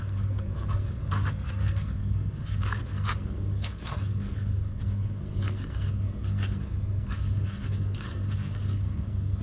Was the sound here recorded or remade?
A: remade